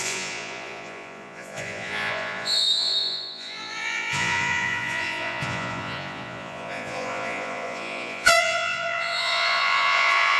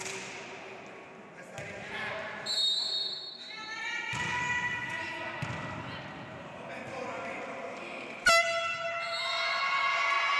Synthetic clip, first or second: first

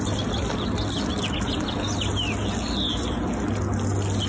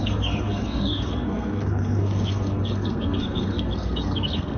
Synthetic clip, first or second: second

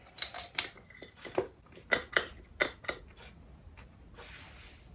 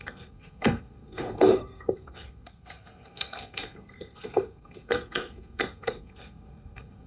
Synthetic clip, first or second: second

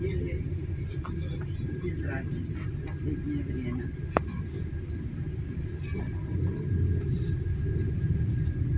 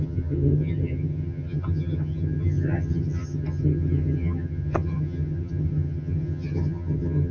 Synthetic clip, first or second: second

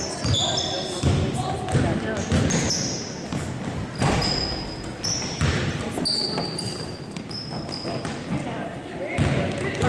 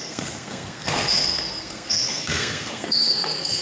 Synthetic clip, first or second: second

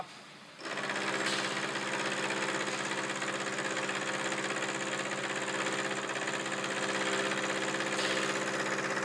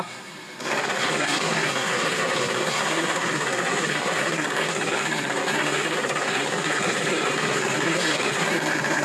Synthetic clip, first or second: second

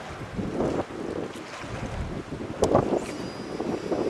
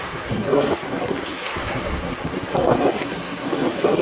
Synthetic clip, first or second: second